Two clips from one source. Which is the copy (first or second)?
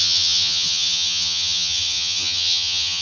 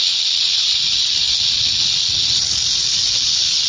first